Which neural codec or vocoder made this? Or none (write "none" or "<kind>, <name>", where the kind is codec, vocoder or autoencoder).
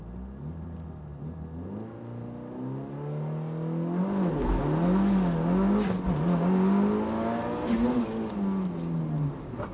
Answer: none